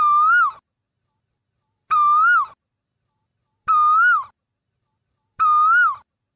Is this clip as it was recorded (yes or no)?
yes